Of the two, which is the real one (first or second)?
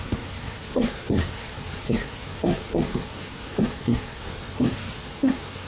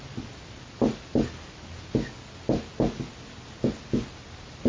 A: second